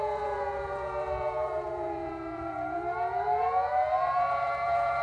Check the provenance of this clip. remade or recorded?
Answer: remade